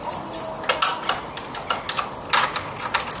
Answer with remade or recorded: recorded